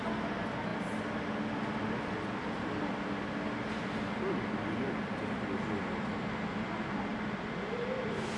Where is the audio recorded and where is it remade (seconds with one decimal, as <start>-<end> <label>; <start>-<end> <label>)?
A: 0.0-8.4 recorded